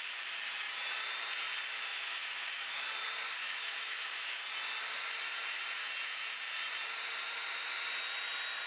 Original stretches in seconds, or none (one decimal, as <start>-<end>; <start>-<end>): 0.0-1.9; 2.8-3.4; 4.4-8.7